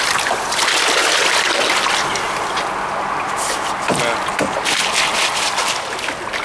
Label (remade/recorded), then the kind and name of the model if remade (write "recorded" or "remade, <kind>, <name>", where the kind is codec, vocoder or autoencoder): recorded